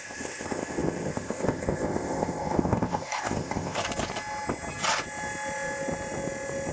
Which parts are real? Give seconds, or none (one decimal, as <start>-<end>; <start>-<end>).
3.8-6.7